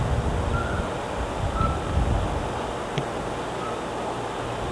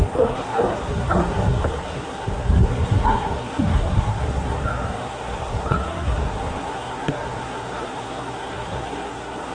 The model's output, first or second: second